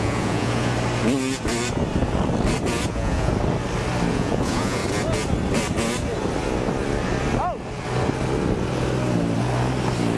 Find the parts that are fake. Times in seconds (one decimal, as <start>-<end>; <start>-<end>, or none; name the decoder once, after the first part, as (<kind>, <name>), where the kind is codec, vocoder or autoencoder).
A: 0.0-0.7 (vocoder, Vocos); 2.9-3.3; 4.1-4.8